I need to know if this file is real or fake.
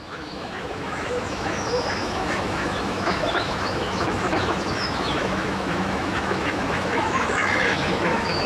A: fake